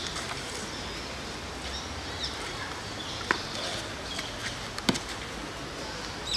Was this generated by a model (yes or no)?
no